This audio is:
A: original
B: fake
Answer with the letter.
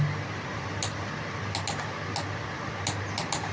A